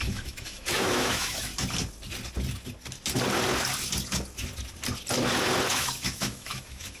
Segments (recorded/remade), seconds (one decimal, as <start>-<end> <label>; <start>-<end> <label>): 0.0-1.5 remade; 1.5-5.7 recorded; 5.7-7.0 remade